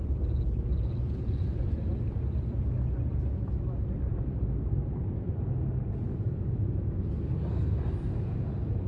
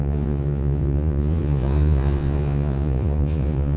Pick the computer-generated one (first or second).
second